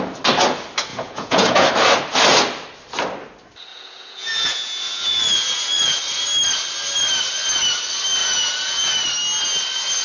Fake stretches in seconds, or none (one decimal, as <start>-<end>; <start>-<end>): 0.9-1.7; 3.7-6.0; 8.2-8.9